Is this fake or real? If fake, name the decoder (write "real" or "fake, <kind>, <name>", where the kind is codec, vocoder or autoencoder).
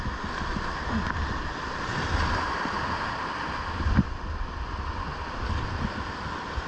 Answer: real